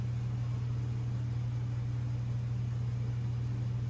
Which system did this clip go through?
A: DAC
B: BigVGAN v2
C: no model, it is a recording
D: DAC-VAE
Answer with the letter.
C